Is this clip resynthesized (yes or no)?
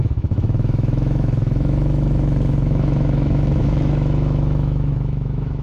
yes